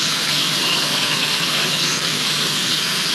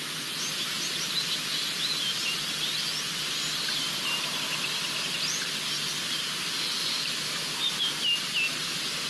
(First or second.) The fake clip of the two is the first